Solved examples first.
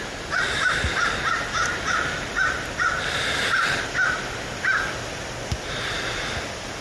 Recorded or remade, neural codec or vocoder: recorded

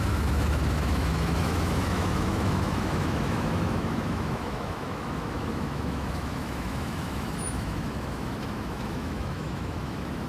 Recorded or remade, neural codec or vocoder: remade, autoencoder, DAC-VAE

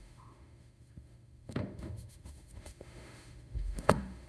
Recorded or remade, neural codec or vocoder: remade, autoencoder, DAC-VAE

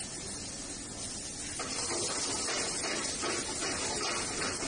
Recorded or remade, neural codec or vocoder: recorded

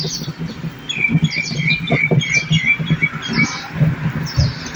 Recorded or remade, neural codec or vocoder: recorded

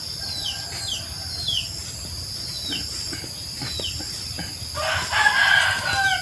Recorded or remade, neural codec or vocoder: recorded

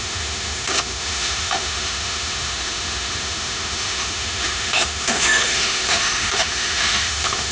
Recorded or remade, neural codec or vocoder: remade, autoencoder, DAC-VAE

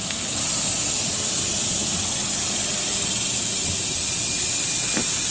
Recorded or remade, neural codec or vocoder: recorded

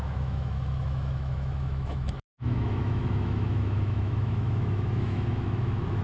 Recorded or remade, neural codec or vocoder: remade, autoencoder, DAC-VAE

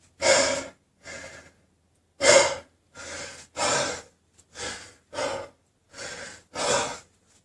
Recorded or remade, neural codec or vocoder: recorded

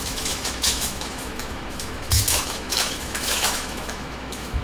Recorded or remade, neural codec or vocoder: remade, autoencoder, DAC-VAE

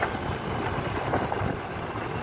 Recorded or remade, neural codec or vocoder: recorded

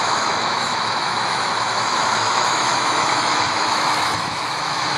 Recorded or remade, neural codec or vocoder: remade, autoencoder, DAC-VAE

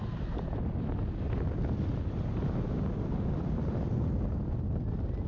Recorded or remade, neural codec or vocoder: recorded